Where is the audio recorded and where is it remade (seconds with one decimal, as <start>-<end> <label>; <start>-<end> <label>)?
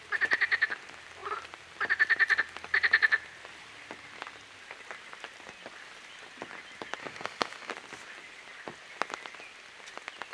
0.0-7.0 recorded; 7.0-7.7 remade; 7.7-10.3 recorded